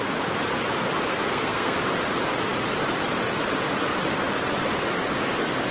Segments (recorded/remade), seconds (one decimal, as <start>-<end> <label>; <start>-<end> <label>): 0.0-1.1 recorded; 1.1-1.8 remade; 1.8-5.7 recorded